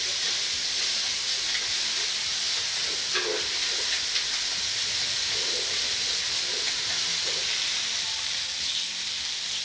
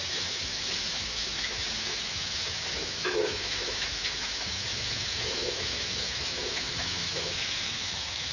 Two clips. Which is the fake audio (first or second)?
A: second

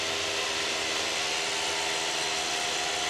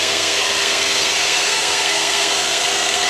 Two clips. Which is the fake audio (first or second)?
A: second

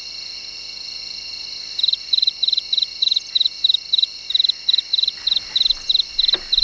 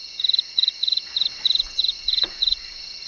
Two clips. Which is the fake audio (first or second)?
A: second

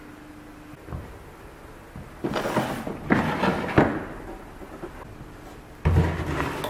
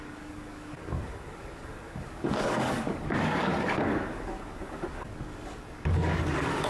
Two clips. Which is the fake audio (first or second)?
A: second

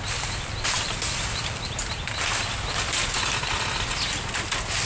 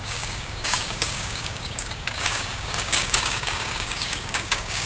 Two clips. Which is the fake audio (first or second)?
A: second